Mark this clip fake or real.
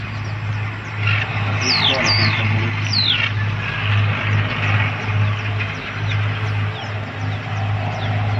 real